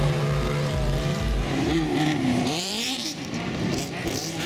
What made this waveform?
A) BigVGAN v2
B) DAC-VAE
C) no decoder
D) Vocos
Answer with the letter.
A